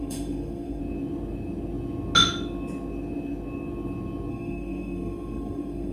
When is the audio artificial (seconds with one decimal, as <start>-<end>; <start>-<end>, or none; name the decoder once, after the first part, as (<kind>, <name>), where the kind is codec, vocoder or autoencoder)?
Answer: 0.0-0.8 (codec, SNAC); 4.3-5.9